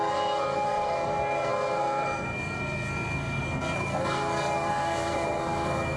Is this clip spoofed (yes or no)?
yes